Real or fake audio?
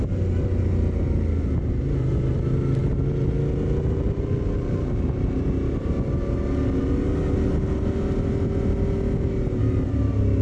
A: real